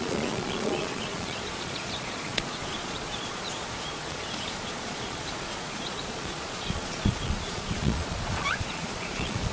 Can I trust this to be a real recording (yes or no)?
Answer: no